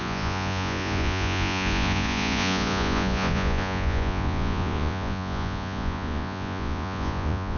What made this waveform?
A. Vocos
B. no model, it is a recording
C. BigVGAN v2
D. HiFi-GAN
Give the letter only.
A